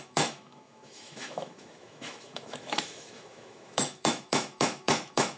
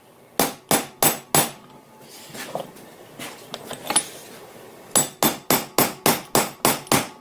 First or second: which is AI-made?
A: first